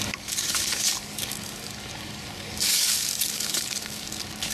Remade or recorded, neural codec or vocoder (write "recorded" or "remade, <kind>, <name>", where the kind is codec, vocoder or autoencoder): remade, codec, DAC